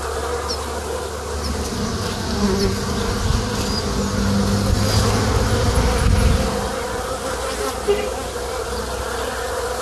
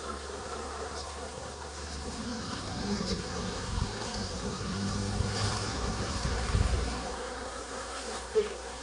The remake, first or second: second